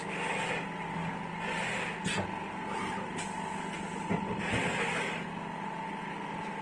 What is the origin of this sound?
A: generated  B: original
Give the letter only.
B